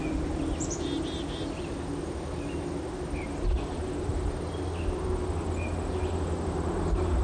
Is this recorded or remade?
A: recorded